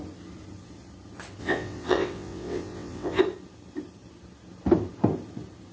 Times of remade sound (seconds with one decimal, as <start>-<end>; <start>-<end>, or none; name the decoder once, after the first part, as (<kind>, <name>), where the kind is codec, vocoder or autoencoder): 1.4-3.2 (vocoder, WaveNeXt)

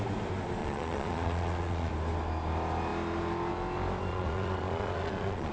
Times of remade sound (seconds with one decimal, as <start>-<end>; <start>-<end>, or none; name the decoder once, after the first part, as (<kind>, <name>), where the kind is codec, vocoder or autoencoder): 0.6-1.9 (vocoder, Vocos); 4.1-5.5

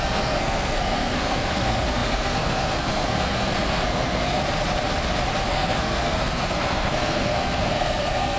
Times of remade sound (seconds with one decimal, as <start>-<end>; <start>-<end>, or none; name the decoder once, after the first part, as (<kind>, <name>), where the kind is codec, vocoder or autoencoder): 0.0-4.4 (codec, SNAC); 5.5-8.4

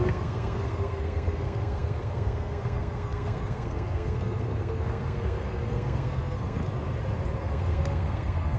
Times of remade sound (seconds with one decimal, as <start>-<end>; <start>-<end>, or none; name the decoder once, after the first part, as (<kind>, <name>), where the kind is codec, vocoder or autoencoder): 0.0-6.6 (codec, SNAC); 7.4-8.6

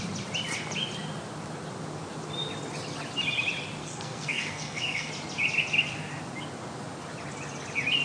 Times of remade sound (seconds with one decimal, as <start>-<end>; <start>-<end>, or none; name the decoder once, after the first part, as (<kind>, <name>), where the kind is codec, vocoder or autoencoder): 3.8-5.1 (codec, SNAC)

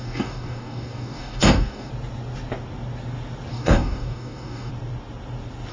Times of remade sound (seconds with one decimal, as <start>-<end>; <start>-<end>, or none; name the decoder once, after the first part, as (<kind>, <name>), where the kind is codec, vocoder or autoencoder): 0.0-1.9 (codec, DAC); 3.5-4.7

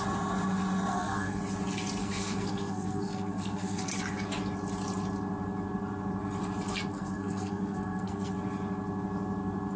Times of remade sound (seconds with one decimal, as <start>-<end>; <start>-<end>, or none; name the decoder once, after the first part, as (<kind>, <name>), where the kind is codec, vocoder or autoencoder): 0.9-1.4 (codec, SNAC); 2.0-4.0; 6.9-8.3

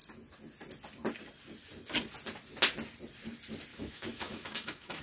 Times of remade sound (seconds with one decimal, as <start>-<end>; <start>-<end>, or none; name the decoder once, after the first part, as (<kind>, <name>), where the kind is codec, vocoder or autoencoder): 3.7-5.0 (autoencoder, DAC-VAE)